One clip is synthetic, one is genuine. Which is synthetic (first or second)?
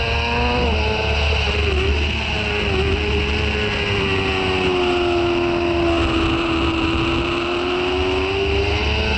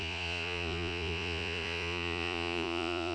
second